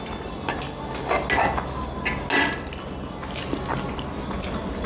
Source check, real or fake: real